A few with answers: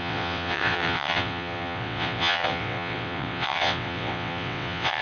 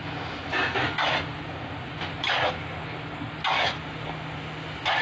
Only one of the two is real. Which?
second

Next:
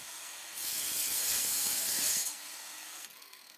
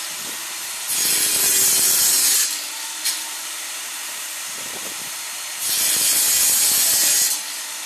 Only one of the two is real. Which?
second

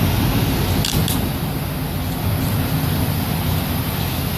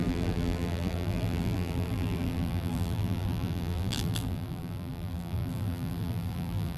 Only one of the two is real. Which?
first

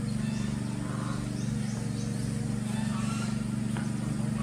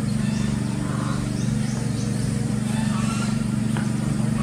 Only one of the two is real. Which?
first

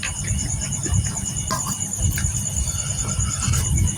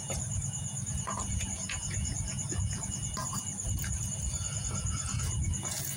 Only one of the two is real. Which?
first